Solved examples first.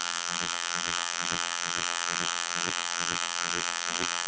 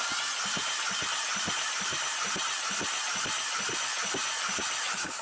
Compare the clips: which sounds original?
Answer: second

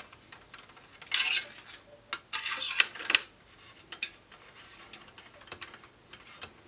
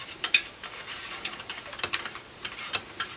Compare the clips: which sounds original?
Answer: first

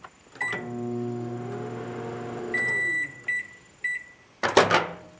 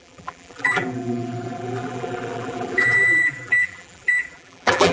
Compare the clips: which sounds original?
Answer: first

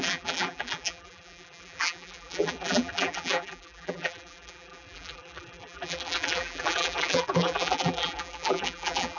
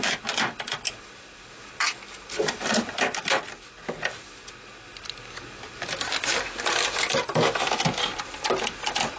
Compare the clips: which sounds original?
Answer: second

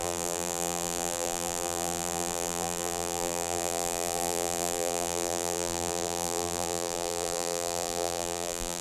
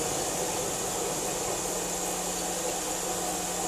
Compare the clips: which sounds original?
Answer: second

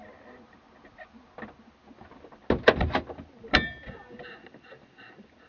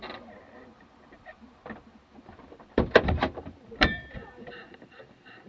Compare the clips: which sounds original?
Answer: first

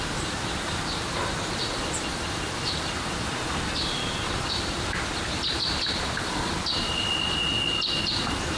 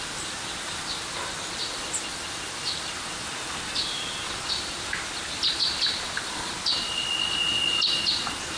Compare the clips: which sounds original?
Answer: second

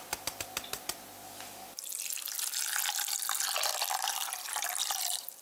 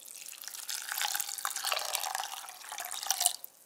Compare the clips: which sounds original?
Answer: second